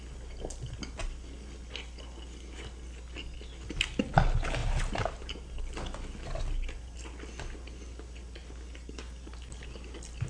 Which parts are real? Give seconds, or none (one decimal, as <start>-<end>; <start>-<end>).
0.0-4.6; 5.6-10.3